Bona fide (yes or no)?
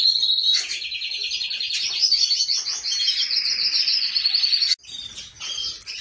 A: yes